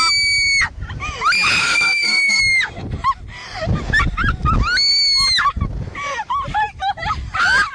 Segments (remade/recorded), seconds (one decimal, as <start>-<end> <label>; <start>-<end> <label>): 0.0-1.6 recorded; 1.6-2.4 remade; 2.4-7.7 recorded